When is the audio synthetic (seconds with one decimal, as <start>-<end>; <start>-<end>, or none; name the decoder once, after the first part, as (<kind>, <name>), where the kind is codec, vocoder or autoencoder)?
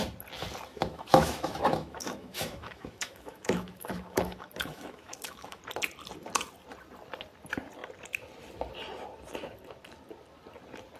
0.7-5.6 (autoencoder, DAC-VAE)